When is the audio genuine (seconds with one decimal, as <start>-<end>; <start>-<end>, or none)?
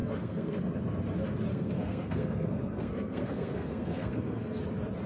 0.6-1.5; 4.6-5.1